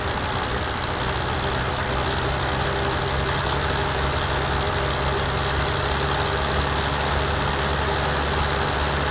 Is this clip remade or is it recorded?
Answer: recorded